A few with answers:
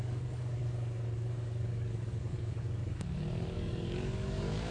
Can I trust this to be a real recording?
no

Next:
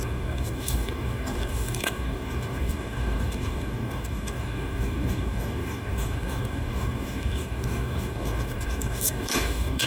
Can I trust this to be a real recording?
no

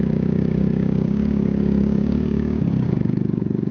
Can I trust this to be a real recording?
no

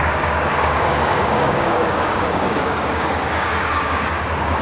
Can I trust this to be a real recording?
no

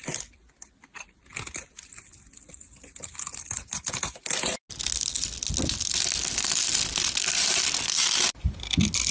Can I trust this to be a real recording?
yes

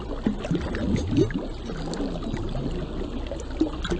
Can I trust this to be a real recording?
yes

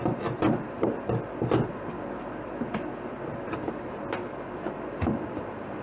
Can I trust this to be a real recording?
yes